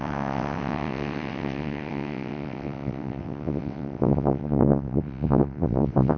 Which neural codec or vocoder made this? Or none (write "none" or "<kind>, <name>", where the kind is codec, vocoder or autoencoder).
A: vocoder, WaveNeXt